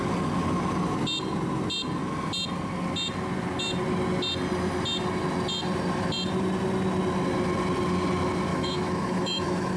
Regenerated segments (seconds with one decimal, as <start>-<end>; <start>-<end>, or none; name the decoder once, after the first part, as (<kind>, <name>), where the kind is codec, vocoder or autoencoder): 8.5-9.8 (autoencoder, DAC-VAE)